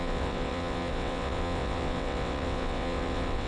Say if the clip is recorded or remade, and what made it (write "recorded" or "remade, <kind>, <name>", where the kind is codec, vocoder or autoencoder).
remade, vocoder, WaveNeXt